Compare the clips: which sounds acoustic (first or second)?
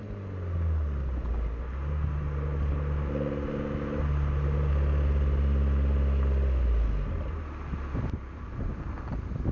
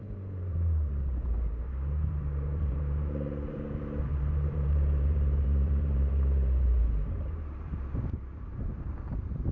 first